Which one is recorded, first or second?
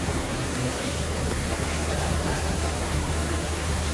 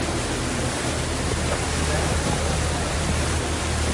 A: second